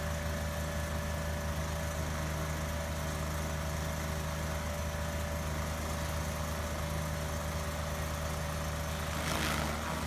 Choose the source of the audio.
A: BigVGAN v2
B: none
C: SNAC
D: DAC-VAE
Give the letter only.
B